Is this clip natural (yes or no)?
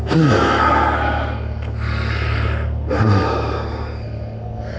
no